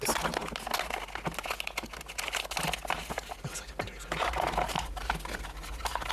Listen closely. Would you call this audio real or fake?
real